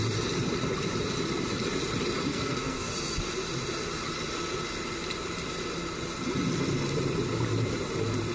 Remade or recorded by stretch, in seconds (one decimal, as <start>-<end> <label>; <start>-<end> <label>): 0.0-2.3 recorded; 2.3-2.9 remade; 2.9-8.3 recorded